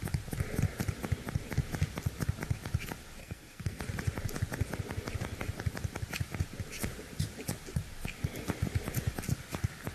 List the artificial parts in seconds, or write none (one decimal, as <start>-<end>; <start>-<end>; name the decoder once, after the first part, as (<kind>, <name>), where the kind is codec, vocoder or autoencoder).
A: 3.2-3.8 (codec, SNAC)